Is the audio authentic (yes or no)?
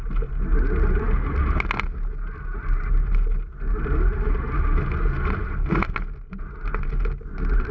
yes